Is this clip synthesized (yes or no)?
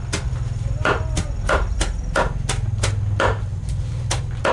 no